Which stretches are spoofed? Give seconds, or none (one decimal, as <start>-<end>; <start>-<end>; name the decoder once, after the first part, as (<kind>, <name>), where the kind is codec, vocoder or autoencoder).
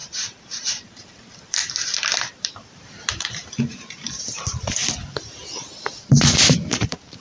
0.0-4.8 (vocoder, BigVGAN v2); 6.0-7.2